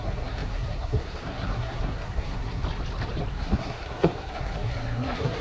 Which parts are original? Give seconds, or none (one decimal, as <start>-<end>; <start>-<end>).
2.6-3.3